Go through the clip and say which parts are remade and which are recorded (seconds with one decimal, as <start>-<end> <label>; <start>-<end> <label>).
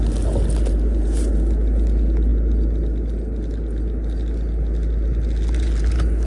0.0-6.3 recorded